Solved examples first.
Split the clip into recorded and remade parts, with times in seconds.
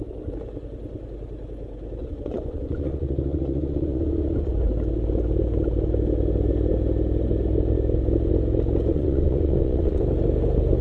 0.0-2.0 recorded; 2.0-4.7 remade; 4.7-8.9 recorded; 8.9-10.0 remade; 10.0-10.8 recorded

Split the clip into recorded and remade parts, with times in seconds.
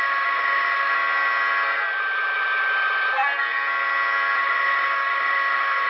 0.0-0.9 remade; 0.9-4.4 recorded; 4.4-5.9 remade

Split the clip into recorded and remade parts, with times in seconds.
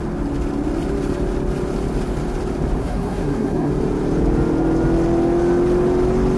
0.0-2.8 recorded; 2.8-3.7 remade; 3.7-6.4 recorded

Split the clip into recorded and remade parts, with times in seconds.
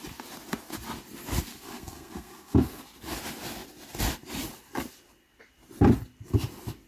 0.0-1.5 recorded; 1.5-2.8 remade; 2.8-6.9 recorded